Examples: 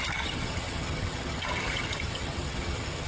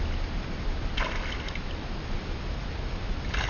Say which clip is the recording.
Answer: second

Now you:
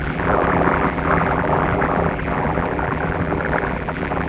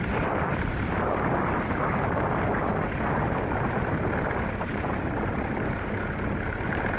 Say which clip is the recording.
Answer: second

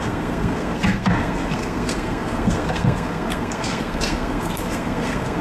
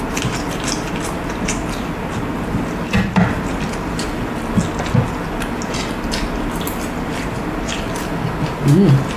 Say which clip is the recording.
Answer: second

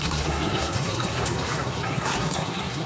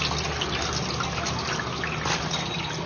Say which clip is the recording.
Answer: second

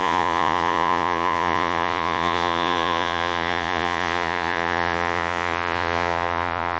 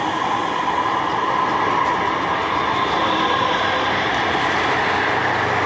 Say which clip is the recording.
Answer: second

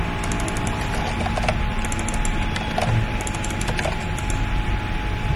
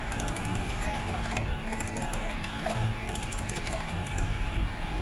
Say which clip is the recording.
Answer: first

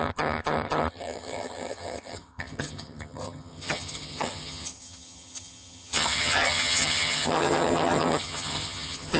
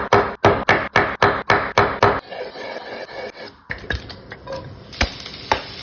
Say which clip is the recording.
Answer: second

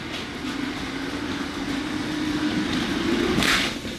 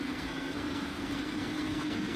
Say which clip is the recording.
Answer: first